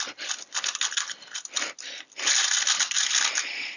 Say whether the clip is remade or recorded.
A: recorded